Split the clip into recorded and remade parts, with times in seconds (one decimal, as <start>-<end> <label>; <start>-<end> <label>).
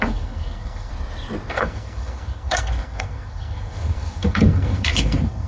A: 0.0-0.9 remade; 0.9-1.5 recorded; 1.5-5.5 remade